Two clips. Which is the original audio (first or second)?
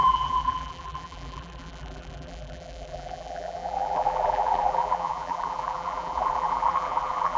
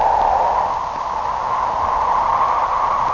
second